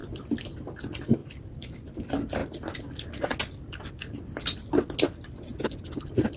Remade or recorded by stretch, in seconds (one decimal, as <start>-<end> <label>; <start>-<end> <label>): 0.0-1.2 recorded; 1.2-1.9 remade; 1.9-6.4 recorded